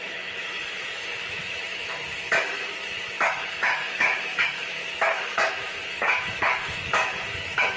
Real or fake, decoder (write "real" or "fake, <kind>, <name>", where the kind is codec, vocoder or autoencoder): fake, autoencoder, DAC-VAE